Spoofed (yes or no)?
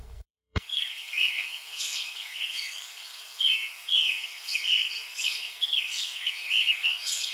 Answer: yes